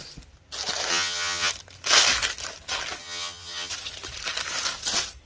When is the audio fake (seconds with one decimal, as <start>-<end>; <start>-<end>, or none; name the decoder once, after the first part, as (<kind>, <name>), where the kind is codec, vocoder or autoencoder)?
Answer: 0.9-1.5 (vocoder, HiFi-GAN); 3.0-3.7